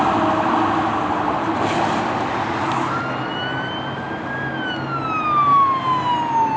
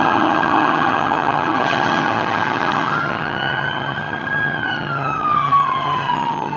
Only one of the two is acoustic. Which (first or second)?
first